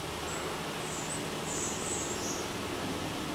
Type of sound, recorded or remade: recorded